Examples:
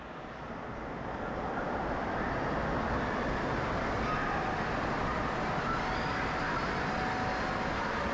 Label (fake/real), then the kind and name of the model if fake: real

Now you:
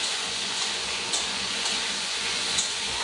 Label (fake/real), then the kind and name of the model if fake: fake, vocoder, Vocos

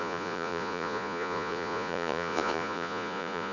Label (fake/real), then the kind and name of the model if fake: fake, vocoder, Vocos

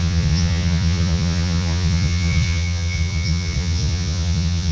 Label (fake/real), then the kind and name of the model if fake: fake, vocoder, Vocos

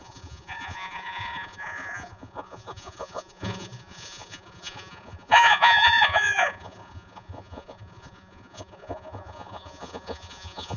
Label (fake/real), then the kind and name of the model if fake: fake, vocoder, Vocos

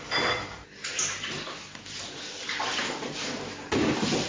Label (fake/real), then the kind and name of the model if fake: real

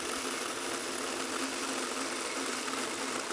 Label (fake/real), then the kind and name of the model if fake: real